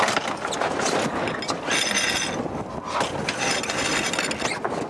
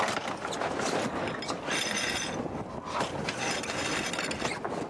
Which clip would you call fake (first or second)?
second